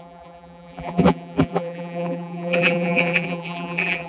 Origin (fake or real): fake